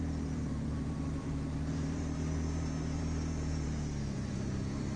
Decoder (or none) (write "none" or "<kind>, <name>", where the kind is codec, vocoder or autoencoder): vocoder, BigVGAN v2